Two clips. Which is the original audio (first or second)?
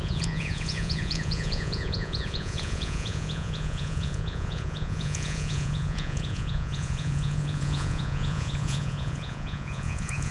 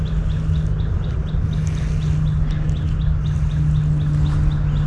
second